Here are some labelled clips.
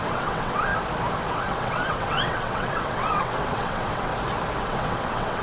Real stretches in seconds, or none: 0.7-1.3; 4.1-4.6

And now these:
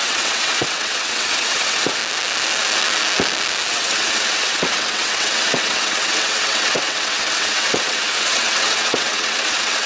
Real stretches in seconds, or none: 2.0-3.7